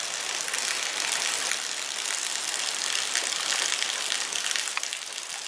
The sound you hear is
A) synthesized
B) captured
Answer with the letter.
B